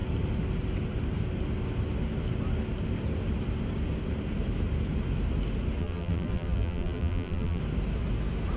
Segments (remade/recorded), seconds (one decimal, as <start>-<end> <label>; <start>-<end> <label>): 0.0-5.8 recorded; 5.8-7.6 remade; 7.6-8.6 recorded